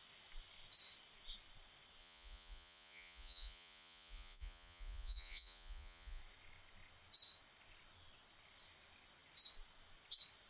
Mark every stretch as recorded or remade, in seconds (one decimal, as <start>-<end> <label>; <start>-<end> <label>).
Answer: 0.0-2.0 recorded; 2.0-6.2 remade; 6.2-10.5 recorded